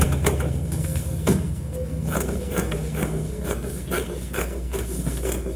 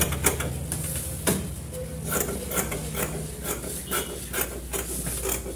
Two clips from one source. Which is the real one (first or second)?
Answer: second